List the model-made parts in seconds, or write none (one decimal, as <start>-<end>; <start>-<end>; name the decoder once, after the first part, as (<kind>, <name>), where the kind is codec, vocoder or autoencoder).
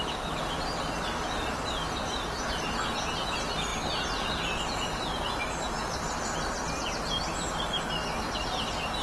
none